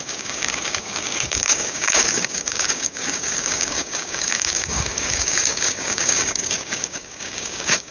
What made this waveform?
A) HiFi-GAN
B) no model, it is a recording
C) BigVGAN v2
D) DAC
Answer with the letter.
D